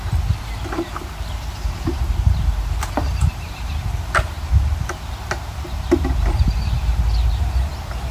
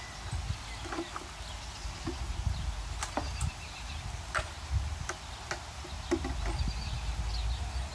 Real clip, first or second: second